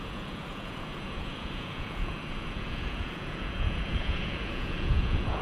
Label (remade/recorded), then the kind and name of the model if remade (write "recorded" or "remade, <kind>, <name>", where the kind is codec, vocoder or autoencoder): remade, vocoder, Vocos